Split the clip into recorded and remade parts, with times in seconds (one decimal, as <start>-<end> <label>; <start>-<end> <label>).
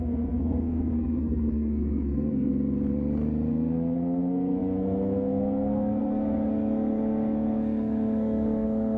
0.0-2.5 remade; 2.5-3.5 recorded; 3.5-9.0 remade